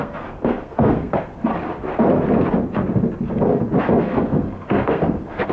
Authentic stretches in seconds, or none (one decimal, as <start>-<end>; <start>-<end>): 1.5-3.8

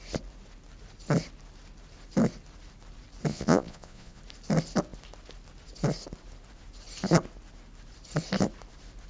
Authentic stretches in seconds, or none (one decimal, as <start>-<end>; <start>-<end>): 0.0-3.3; 4.2-9.1

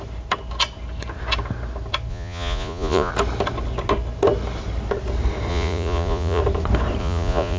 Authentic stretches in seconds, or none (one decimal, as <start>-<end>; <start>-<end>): 0.0-2.1; 3.1-5.5; 6.4-7.0

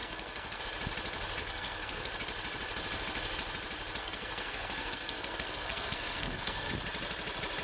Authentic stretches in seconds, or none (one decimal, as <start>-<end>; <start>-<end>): 0.6-1.4; 2.1-4.0; 6.7-7.6

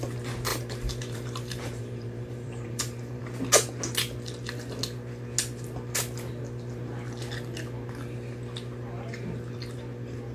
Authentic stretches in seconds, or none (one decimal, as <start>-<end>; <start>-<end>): 0.0-0.5; 3.2-10.3